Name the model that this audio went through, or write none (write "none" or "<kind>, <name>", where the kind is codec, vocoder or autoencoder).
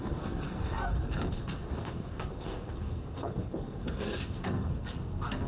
codec, SNAC